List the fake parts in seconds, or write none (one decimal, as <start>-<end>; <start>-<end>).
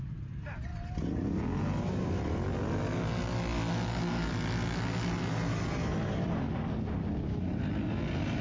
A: none